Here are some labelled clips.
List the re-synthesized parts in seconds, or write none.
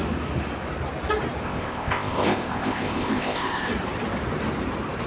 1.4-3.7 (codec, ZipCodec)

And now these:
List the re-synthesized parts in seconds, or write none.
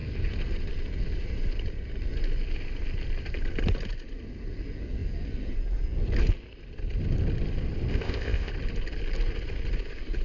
7.9-8.5 (codec, ZipCodec)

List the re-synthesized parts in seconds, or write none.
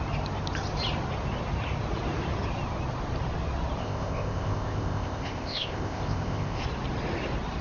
3.8-6.6 (codec, ZipCodec)